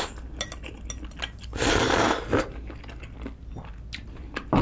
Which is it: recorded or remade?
recorded